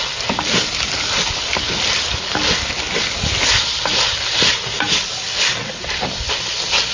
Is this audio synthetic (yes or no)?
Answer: no